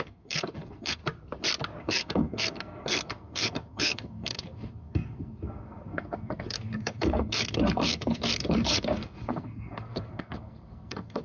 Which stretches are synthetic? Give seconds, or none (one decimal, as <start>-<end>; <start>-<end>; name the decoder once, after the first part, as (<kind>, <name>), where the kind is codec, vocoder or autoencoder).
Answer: 0.0-1.0 (codec, SNAC); 1.8-11.2